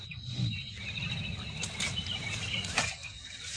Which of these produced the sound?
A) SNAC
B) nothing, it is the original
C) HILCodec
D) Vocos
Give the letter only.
B